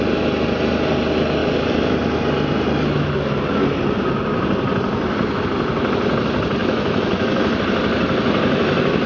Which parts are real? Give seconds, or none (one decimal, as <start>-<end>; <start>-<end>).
0.0-6.6; 7.6-9.1